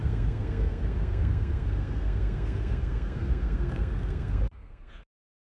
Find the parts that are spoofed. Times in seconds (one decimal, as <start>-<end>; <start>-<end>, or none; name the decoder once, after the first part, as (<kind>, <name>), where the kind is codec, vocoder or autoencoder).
0.0-5.5 (codec, SNAC)